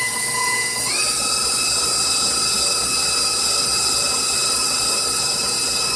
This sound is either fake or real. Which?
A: real